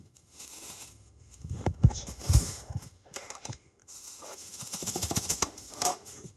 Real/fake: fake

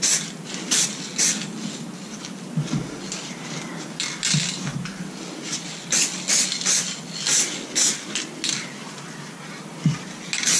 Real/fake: real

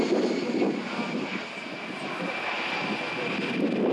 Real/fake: real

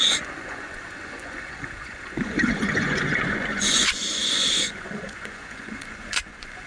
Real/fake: fake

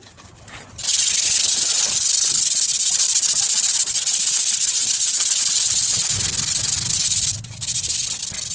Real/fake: real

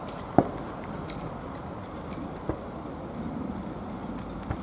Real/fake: real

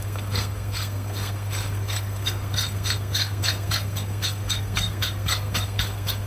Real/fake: fake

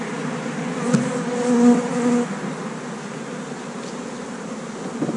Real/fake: real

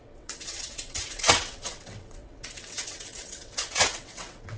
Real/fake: fake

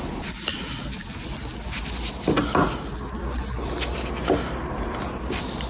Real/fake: real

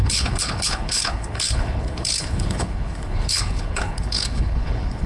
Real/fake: fake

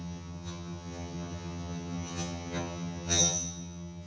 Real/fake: fake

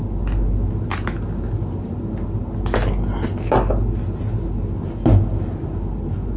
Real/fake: real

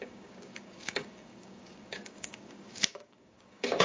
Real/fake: fake